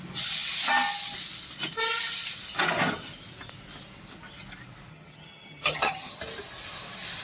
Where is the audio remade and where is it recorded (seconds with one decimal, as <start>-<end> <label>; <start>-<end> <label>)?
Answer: 0.0-4.9 recorded; 4.9-6.2 remade; 6.2-7.2 recorded